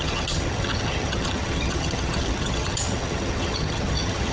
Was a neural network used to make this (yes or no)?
yes